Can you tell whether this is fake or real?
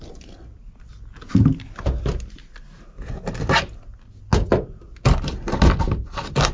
real